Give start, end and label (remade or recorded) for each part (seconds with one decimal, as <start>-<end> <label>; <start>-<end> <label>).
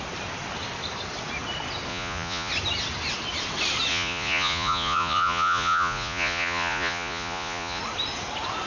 0.0-1.9 recorded; 1.9-2.5 remade; 2.5-3.9 recorded; 3.9-7.8 remade; 7.8-8.7 recorded